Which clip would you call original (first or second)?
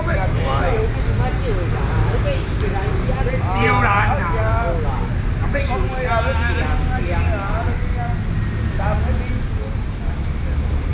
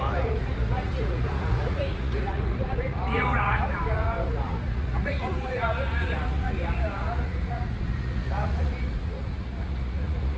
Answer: first